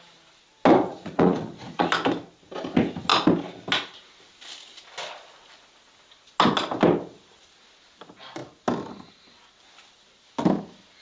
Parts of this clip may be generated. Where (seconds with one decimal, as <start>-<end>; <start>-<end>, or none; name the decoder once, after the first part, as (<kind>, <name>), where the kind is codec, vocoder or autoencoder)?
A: 0.9-1.9 (vocoder, Vocos)